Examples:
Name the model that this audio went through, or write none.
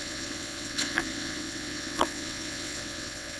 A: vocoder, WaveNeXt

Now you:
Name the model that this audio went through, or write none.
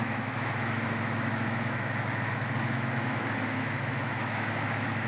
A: autoencoder, DAC-VAE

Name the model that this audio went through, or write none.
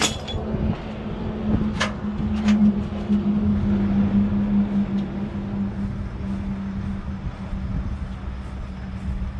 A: none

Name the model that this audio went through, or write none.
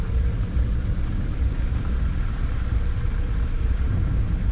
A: vocoder, BigVGAN v2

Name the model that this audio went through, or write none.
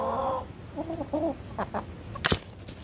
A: none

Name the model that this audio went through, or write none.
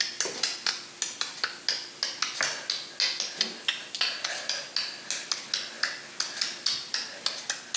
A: none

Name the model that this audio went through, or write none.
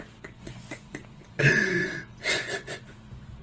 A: vocoder, Vocos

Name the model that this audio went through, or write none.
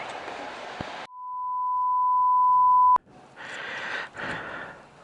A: none